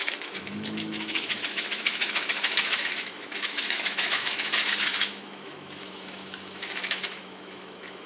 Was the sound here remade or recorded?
remade